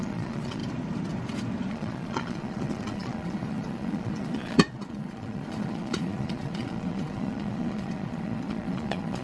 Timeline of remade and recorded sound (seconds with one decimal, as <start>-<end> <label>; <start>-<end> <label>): 0.0-0.6 remade; 0.6-1.7 recorded; 1.7-9.2 remade